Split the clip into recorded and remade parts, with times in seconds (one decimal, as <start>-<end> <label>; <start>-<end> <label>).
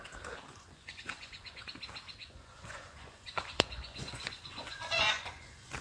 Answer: 0.0-0.5 recorded; 0.5-1.7 remade; 1.7-2.2 recorded; 2.2-5.8 remade